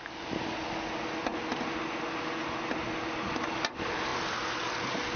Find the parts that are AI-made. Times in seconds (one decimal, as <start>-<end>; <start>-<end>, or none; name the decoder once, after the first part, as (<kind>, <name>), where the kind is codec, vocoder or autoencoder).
none

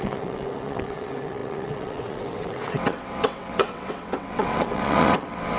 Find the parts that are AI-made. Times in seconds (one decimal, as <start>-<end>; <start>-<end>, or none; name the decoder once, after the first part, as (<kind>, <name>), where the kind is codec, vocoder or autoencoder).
0.0-5.6 (vocoder, WaveNeXt)